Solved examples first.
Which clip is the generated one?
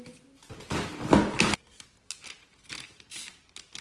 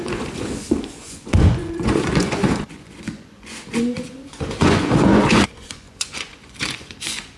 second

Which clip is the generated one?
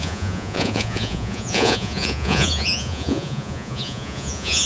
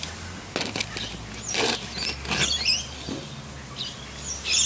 first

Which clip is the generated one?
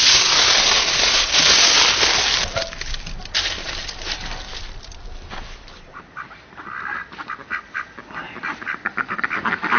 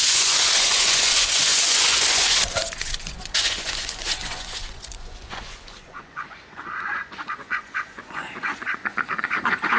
second